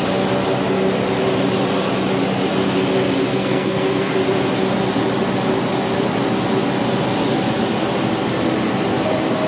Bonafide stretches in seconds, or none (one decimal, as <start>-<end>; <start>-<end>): 0.0-3.3; 4.1-9.5